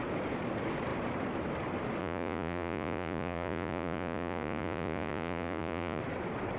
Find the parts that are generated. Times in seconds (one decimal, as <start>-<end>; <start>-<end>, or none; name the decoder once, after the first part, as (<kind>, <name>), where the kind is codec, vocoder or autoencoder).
2.0-6.0 (vocoder, Vocos)